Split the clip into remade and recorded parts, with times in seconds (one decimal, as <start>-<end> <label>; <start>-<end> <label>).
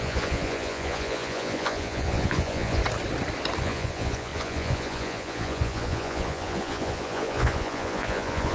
0.0-2.8 remade; 2.8-3.6 recorded; 3.6-8.5 remade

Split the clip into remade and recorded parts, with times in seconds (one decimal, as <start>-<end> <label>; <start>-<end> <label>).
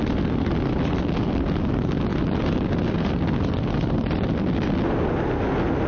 0.0-5.9 recorded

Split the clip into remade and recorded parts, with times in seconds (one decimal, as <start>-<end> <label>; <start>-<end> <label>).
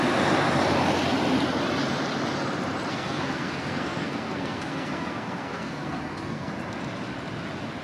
0.0-2.9 recorded; 2.9-6.5 remade; 6.5-7.8 recorded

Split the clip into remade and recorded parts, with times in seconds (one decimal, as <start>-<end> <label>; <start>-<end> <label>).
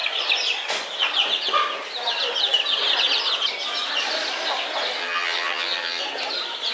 0.0-5.0 recorded; 5.0-6.0 remade; 6.0-6.7 recorded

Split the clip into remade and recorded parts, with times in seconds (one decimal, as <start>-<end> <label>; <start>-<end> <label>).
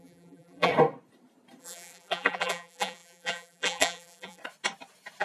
0.0-0.7 remade; 0.7-1.6 recorded; 1.6-4.4 remade; 4.4-5.2 recorded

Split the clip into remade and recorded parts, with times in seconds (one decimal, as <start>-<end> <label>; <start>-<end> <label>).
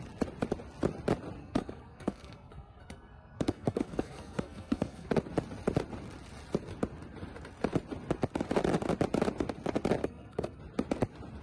0.0-1.4 recorded; 1.4-5.1 remade; 5.1-10.0 recorded; 10.0-10.6 remade; 10.6-11.4 recorded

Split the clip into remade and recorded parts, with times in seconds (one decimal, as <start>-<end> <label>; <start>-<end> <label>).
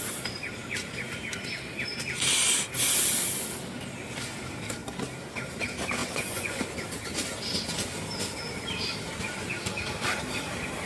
0.0-6.0 recorded; 6.0-6.6 remade; 6.6-10.9 recorded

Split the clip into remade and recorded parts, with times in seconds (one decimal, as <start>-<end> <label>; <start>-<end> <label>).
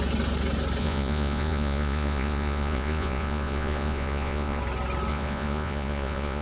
0.0-0.8 recorded; 0.8-4.6 remade; 4.6-5.1 recorded; 5.1-6.4 remade